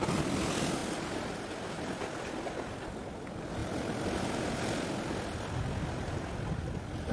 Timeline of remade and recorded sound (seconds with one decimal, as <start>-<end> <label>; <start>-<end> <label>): 0.0-7.1 recorded